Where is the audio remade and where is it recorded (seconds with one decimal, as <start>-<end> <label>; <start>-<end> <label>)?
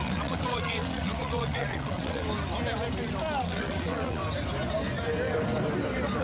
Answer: 0.0-2.3 remade; 2.3-3.4 recorded; 3.4-4.2 remade; 4.2-6.2 recorded